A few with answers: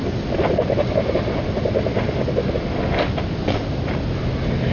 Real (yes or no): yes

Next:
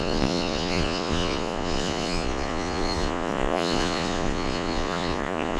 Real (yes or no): no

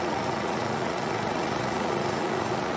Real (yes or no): no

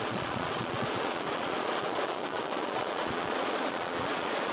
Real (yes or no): no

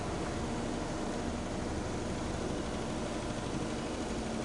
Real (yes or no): yes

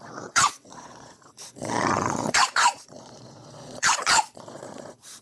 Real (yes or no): no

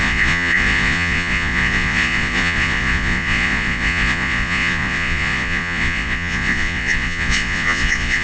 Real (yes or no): no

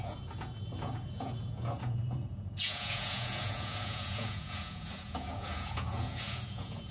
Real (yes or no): no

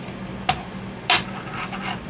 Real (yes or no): yes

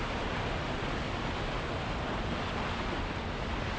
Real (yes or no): yes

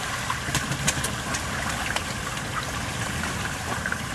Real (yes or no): yes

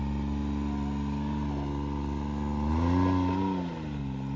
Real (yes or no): yes